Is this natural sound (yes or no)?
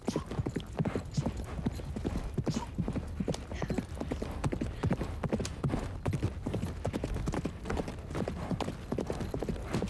yes